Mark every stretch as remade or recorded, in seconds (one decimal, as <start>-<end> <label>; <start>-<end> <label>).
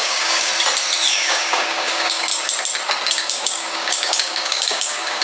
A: 0.0-0.5 remade; 0.5-1.1 recorded; 1.1-2.3 remade; 2.3-3.1 recorded; 3.1-5.2 remade